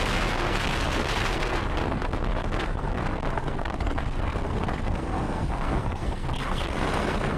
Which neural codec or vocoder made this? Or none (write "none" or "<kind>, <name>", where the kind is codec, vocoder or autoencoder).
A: codec, SNAC